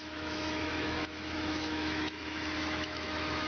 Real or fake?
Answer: fake